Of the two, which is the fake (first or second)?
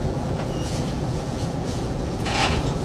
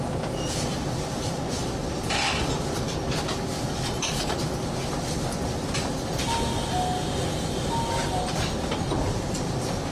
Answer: first